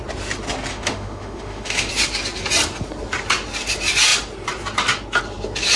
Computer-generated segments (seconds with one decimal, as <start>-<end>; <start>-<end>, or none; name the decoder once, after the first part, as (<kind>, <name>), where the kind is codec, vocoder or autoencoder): 0.7-1.9 (autoencoder, DAC-VAE)